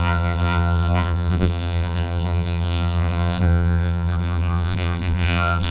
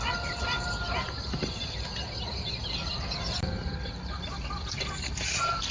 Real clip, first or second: second